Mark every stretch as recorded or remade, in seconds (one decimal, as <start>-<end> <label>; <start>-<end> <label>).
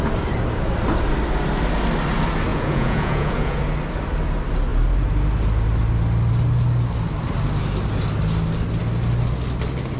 0.0-2.5 recorded; 2.5-3.6 remade; 3.6-10.0 recorded